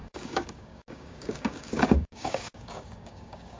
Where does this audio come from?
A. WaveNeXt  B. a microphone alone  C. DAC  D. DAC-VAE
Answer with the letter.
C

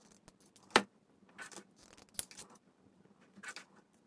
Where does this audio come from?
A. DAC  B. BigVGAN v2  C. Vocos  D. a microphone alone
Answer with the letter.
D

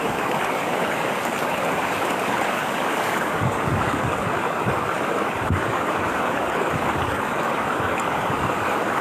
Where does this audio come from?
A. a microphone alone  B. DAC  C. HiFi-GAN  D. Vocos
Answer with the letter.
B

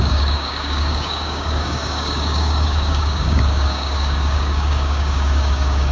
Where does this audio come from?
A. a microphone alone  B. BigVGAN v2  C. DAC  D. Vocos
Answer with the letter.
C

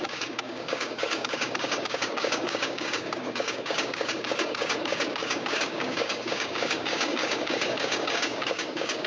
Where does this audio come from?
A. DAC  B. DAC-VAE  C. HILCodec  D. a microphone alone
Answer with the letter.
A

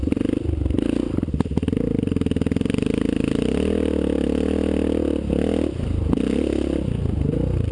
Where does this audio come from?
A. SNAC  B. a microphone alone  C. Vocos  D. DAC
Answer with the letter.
B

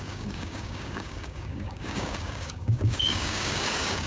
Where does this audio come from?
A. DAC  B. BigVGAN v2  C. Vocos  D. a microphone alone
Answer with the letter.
A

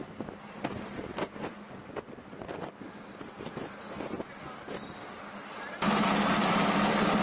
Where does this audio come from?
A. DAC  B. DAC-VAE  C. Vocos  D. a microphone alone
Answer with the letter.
D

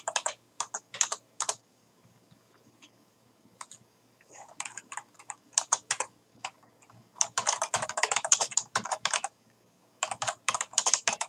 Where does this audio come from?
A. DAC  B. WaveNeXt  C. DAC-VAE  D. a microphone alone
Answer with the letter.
A